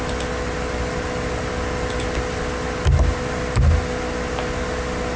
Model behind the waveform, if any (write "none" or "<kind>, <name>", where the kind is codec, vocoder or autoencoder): none